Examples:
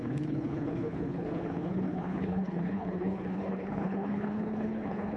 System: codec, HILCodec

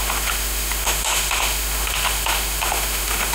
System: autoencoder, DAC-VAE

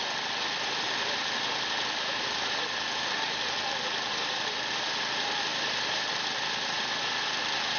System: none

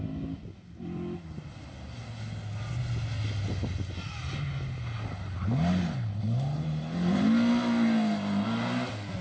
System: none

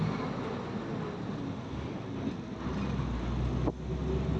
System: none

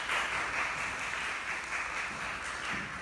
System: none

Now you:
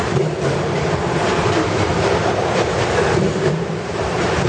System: vocoder, BigVGAN v2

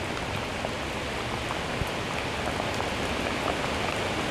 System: none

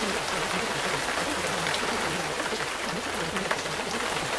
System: none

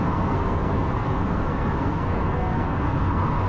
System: codec, SNAC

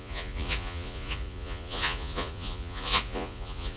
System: vocoder, Vocos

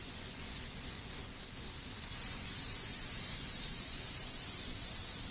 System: vocoder, Vocos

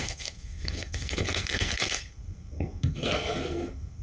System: codec, SNAC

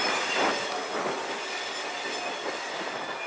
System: none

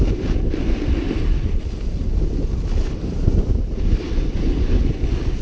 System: none